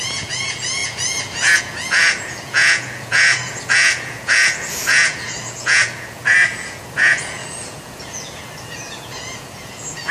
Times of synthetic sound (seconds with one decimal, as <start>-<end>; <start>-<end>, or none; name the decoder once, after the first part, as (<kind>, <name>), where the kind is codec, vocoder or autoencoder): 0.0-10.1 (vocoder, Vocos)